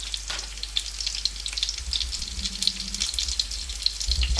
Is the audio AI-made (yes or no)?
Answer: no